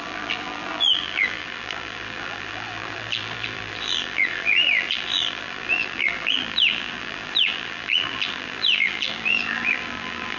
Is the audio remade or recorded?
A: remade